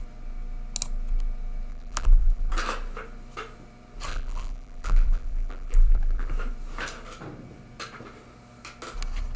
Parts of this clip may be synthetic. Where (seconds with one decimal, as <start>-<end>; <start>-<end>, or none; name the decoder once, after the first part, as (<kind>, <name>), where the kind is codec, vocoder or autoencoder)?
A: 1.7-2.5 (vocoder, BigVGAN v2); 4.1-6.3